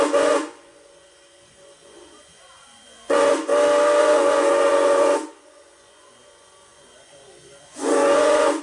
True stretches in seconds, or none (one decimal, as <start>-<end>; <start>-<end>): 3.5-4.0